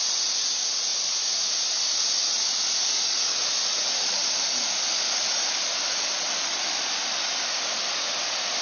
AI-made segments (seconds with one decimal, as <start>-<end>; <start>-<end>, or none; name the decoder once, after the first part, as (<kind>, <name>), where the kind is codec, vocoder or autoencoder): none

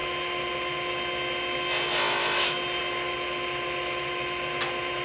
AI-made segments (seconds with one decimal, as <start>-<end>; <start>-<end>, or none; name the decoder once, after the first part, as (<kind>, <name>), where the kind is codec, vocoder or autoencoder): none

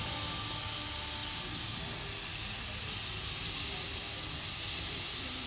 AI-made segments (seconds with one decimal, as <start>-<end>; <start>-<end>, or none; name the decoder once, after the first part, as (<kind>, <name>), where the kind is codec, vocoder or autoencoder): none

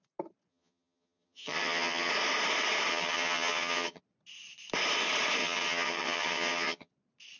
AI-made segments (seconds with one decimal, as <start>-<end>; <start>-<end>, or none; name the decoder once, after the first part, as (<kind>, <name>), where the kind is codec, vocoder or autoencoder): 0.5-2.1 (vocoder, HiFi-GAN); 2.9-4.0; 5.4-6.9

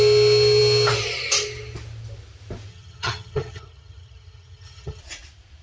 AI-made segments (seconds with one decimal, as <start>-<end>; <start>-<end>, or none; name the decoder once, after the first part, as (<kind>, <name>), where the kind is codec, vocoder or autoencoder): 2.7-5.0 (vocoder, HiFi-GAN)

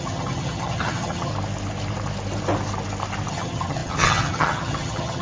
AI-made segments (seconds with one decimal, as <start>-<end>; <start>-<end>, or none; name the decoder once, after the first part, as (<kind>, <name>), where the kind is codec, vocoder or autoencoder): 0.0-1.3 (vocoder, HiFi-GAN); 3.3-5.2

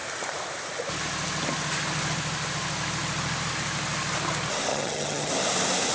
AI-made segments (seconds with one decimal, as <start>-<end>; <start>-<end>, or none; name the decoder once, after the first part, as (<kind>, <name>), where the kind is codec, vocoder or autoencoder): 4.7-5.3 (vocoder, HiFi-GAN)